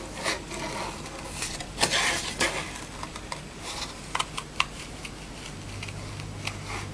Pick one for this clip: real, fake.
real